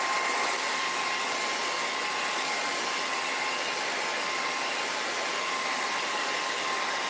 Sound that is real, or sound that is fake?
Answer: real